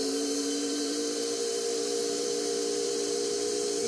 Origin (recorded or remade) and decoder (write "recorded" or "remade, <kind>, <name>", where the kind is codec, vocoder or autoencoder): remade, vocoder, BigVGAN v2